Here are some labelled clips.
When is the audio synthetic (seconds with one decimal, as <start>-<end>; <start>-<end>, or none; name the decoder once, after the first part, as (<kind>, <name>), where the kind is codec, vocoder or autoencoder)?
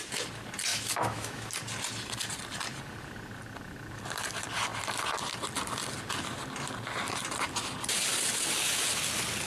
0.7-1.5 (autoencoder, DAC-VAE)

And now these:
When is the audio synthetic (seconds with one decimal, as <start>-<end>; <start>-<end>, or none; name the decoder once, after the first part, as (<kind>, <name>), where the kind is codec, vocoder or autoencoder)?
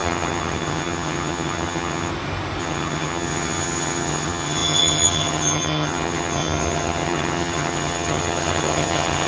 0.0-2.1 (vocoder, HiFi-GAN); 2.6-9.3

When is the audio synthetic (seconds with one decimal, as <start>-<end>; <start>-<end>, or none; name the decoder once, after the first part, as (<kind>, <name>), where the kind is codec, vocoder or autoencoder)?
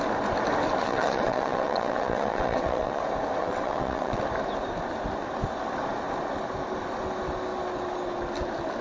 0.8-3.0 (vocoder, WaveNeXt); 3.4-4.2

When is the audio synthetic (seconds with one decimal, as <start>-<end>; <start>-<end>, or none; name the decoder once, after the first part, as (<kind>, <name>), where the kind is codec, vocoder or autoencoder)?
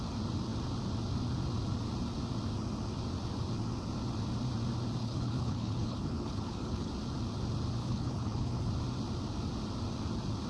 5.0-6.9 (codec, HILCodec); 7.8-8.7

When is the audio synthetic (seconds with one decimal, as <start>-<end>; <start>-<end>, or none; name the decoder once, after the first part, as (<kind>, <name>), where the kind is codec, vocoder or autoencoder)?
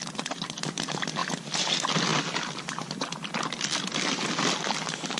0.0-1.2 (vocoder, BigVGAN v2); 1.7-5.2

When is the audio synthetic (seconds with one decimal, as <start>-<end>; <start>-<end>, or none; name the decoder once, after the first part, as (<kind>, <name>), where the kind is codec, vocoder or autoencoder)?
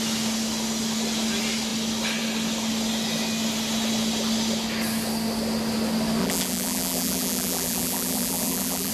6.2-8.9 (vocoder, BigVGAN v2)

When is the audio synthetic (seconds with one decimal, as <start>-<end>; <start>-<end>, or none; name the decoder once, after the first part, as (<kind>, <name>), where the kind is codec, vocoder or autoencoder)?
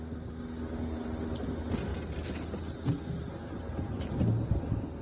none